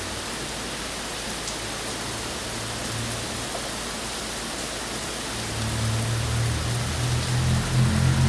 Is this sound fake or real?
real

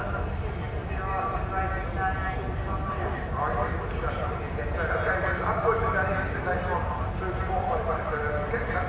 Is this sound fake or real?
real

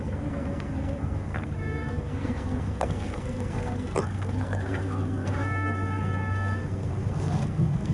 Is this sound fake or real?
fake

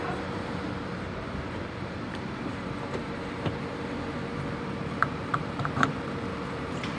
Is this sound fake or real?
fake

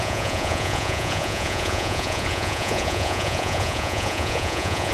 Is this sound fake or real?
fake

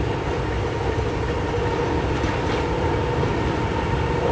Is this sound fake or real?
real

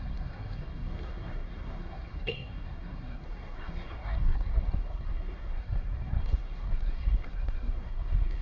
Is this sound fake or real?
fake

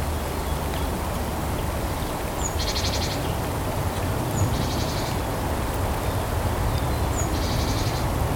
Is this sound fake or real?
real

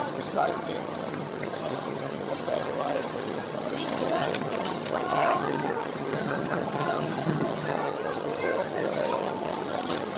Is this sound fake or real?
fake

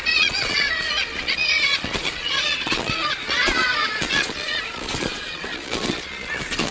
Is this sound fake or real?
fake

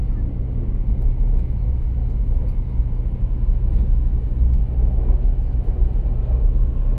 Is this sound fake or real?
real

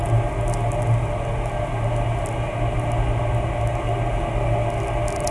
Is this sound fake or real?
real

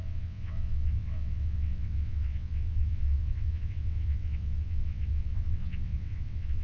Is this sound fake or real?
fake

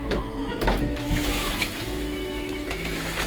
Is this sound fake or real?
fake